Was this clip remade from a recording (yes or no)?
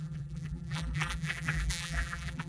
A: yes